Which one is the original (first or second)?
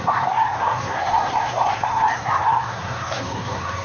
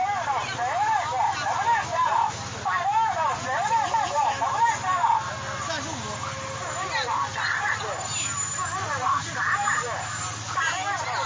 second